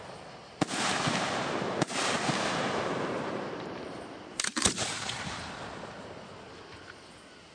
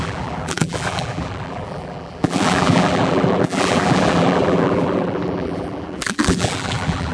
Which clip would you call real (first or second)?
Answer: first